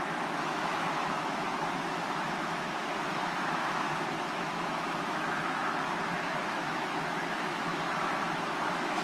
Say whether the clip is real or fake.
fake